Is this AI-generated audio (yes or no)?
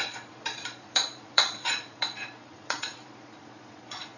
yes